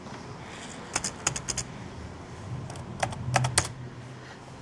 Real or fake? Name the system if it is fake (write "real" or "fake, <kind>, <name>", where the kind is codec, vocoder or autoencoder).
real